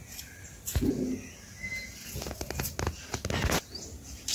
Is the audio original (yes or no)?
yes